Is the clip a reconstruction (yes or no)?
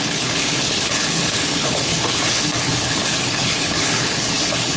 yes